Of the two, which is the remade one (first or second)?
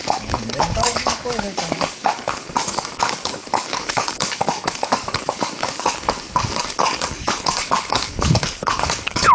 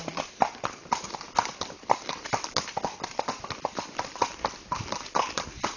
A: first